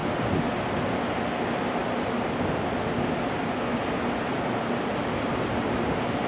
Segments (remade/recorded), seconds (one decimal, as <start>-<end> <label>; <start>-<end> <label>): 0.0-6.3 recorded